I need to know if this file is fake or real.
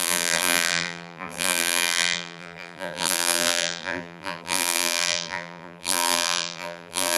fake